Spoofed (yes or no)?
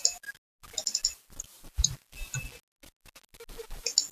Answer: no